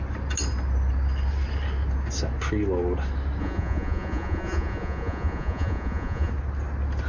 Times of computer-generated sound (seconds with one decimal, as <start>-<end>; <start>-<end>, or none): 3.4-6.3